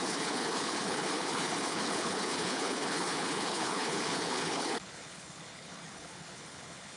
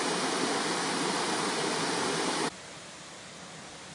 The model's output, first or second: first